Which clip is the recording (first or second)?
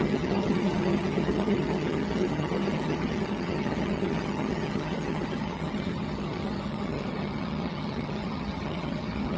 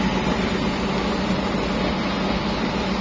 second